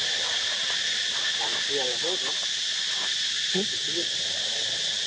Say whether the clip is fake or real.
real